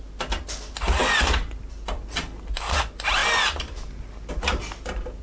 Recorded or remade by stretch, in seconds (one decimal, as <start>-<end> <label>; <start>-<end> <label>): 0.0-5.2 recorded